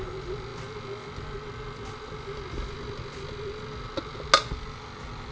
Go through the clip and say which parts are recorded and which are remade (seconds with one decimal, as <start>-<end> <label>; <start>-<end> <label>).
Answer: 0.0-5.3 recorded